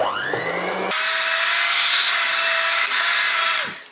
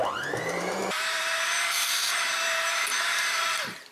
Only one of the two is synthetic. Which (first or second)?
second